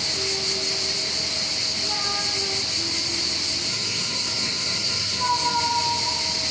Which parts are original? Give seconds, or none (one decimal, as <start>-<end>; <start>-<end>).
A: 0.0-3.7; 5.2-6.5